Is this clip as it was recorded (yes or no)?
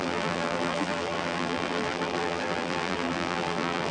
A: no